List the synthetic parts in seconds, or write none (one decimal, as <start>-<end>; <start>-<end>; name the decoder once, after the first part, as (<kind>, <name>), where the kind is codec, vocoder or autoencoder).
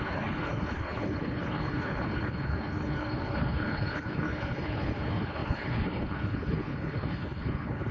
0.0-7.9 (codec, HILCodec)